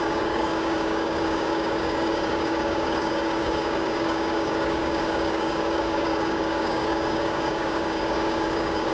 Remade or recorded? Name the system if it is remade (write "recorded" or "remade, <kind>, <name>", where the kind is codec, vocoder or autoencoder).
remade, codec, DAC